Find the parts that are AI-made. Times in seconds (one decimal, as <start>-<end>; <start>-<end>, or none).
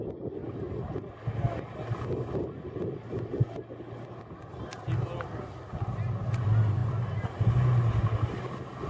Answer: none